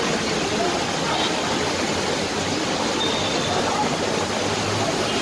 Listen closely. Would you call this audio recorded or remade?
recorded